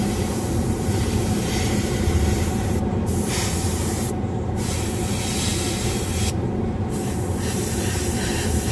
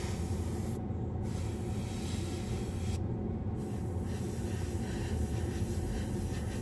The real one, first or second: second